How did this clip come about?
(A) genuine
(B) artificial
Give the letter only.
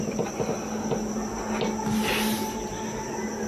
A